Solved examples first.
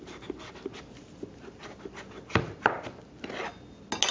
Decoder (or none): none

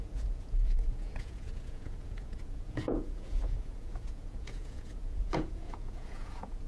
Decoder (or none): vocoder, Vocos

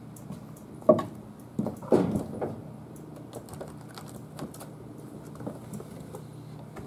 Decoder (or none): none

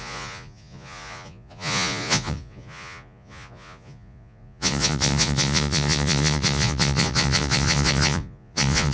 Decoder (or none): vocoder, Vocos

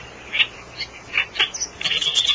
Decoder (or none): none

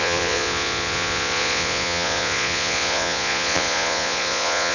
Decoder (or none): vocoder, Vocos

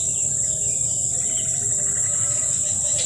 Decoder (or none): none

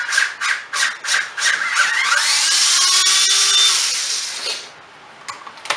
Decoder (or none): none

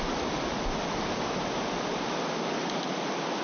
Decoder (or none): none